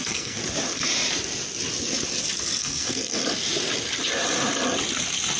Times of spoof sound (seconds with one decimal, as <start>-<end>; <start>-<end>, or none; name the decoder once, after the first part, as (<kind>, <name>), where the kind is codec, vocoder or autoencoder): 0.0-0.4 (codec, SNAC); 2.6-3.2